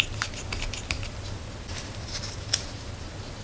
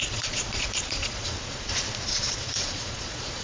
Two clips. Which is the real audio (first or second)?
first